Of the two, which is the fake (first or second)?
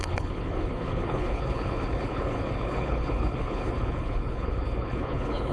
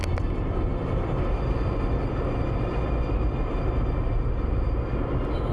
first